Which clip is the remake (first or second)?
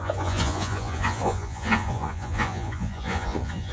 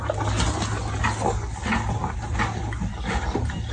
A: first